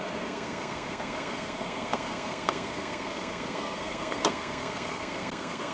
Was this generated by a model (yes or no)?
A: yes